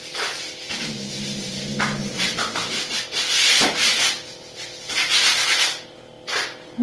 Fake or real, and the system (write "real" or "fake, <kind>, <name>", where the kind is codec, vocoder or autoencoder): real